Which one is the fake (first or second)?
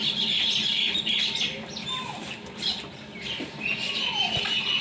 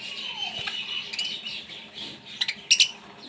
first